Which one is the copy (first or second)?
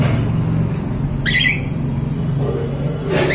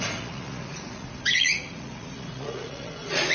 second